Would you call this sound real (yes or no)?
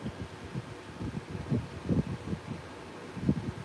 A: yes